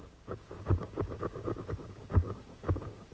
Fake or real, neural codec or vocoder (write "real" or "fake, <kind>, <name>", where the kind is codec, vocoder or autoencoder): fake, codec, DAC